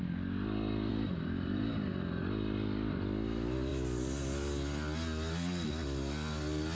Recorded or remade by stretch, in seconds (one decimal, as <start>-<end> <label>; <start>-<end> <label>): 0.0-0.9 recorded; 0.9-1.9 remade; 1.9-6.7 recorded